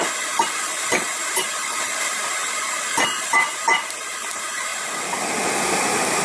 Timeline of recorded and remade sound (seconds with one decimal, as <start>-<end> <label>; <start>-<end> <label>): 0.0-6.2 recorded